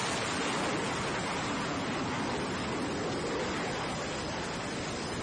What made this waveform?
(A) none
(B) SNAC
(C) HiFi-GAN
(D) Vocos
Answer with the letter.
A